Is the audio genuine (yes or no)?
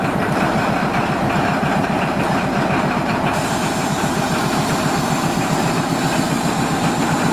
no